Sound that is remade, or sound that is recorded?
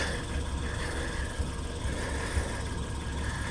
recorded